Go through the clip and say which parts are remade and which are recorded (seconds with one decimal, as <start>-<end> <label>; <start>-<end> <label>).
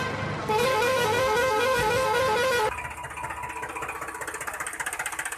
0.0-0.4 recorded; 0.4-2.2 remade; 2.2-5.4 recorded